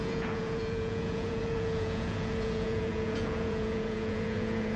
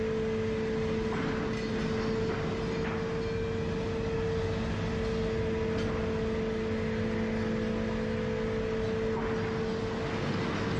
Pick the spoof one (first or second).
first